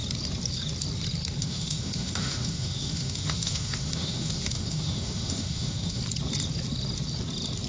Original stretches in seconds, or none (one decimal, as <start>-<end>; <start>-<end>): 0.0-1.4; 6.0-7.7